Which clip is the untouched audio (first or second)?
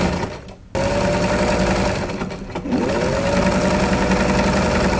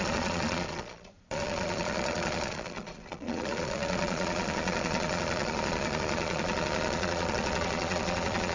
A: first